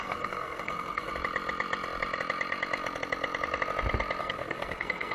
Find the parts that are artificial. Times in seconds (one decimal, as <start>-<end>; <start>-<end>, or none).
0.0-1.1; 4.2-5.1